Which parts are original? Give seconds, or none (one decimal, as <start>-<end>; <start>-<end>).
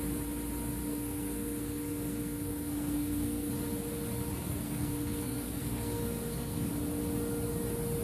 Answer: 0.0-0.8; 3.5-4.3; 6.7-8.0